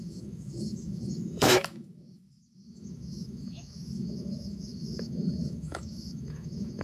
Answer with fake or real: fake